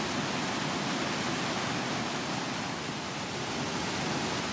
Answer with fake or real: real